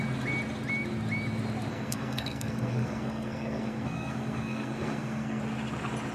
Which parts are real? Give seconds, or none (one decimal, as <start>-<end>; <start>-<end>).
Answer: 0.0-1.7; 5.4-6.1